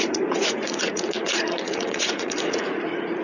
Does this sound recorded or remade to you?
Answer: remade